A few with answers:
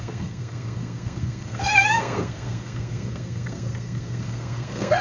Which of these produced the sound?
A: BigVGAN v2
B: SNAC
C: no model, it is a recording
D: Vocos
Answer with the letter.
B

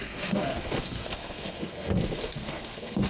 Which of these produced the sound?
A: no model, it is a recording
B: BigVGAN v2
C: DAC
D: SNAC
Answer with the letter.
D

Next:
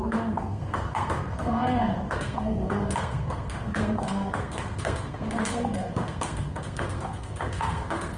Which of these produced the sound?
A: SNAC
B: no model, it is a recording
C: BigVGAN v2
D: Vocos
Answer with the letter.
A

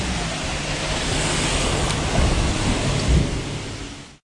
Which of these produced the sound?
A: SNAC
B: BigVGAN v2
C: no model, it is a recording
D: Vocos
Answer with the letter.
C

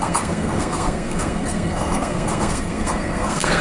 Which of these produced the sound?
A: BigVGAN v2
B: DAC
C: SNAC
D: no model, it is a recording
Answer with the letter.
C